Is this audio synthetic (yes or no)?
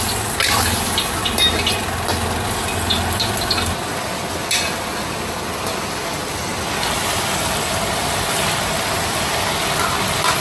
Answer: no